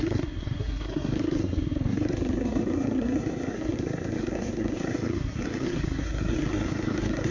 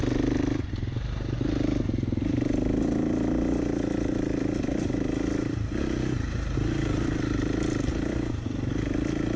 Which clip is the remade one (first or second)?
first